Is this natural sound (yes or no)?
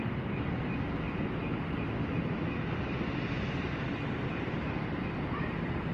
yes